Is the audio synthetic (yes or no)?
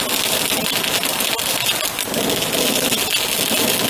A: no